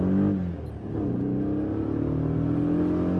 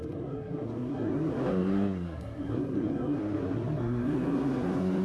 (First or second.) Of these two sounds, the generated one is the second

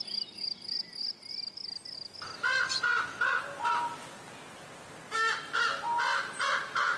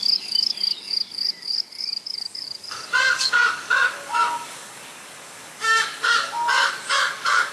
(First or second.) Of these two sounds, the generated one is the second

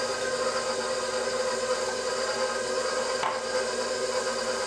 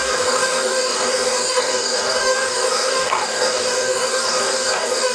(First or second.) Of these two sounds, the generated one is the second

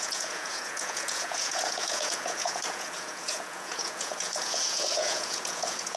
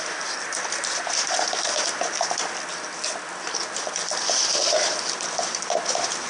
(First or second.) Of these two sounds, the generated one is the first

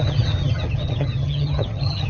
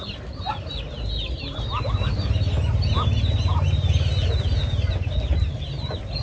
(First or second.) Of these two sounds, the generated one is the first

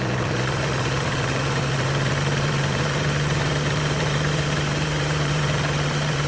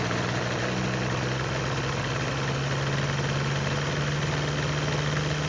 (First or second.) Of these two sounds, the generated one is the first